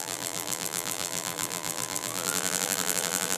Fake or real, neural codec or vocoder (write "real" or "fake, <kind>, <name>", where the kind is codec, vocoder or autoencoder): fake, vocoder, BigVGAN v2